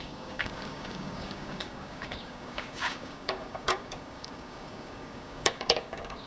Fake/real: fake